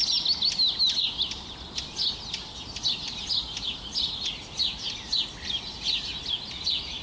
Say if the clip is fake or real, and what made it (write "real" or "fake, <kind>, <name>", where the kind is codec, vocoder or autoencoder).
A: real